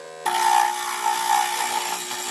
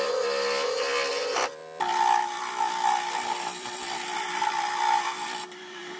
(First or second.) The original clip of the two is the first